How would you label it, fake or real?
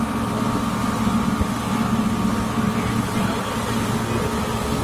real